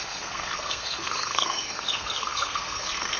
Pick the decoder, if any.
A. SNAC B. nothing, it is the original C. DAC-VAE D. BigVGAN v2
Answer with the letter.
A